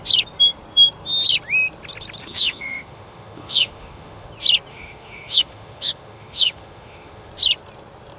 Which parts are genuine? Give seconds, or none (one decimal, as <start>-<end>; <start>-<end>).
0.0-2.2; 4.3-4.7; 7.3-8.2